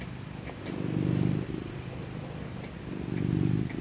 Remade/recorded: recorded